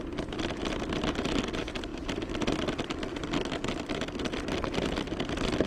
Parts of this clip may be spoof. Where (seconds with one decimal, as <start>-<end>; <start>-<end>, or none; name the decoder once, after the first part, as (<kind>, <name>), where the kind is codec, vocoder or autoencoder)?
none